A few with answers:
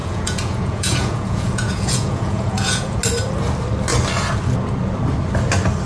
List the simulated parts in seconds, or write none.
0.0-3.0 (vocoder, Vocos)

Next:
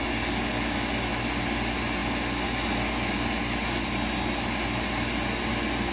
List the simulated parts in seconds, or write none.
none